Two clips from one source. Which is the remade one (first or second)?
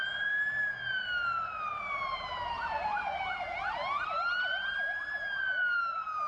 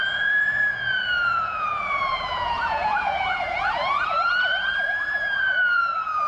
second